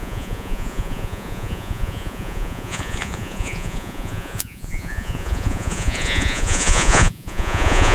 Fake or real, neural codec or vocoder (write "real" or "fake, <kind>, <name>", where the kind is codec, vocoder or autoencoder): fake, vocoder, Vocos